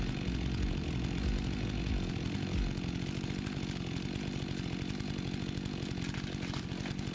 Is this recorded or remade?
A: recorded